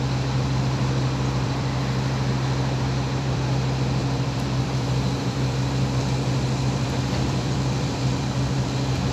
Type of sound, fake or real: fake